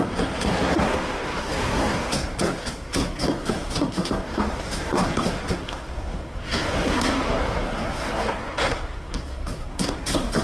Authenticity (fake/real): fake